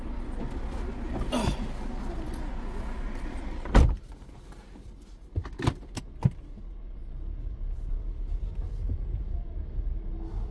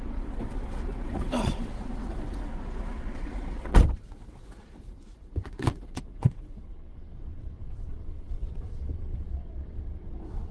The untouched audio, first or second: first